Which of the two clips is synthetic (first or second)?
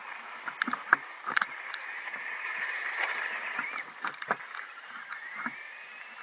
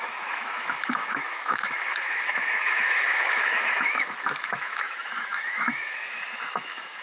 second